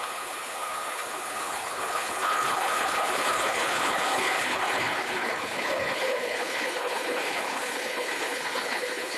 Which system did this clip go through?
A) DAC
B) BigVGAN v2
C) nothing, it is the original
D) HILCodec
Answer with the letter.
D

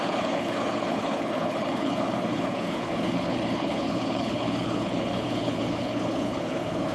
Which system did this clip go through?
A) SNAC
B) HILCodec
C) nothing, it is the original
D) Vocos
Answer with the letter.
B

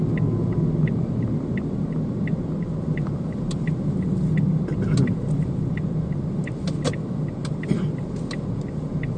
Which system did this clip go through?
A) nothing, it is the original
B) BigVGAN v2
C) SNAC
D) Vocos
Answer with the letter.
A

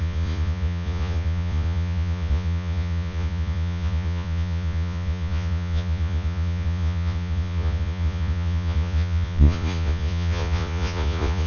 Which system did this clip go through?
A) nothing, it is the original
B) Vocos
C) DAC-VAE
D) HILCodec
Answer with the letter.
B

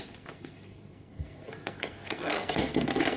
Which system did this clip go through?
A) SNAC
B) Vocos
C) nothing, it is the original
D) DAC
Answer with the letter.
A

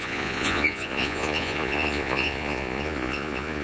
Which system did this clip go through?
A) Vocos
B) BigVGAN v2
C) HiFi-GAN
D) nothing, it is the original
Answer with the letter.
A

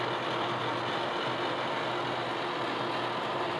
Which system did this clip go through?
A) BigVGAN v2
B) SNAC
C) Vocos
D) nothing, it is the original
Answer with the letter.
D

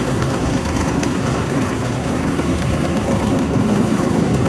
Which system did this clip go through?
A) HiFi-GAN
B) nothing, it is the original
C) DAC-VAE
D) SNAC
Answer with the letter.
D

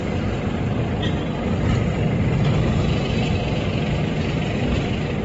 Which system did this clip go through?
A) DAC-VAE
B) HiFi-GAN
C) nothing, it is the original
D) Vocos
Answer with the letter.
C